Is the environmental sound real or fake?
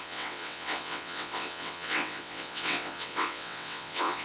fake